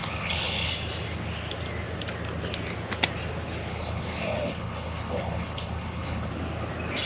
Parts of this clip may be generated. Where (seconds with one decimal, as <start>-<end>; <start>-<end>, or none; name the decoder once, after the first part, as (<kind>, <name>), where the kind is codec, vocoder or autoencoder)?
0.0-0.7 (codec, HILCodec); 3.7-6.3